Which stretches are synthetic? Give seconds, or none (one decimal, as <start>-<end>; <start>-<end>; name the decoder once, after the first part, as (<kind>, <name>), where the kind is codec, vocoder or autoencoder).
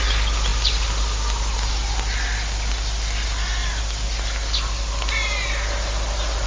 none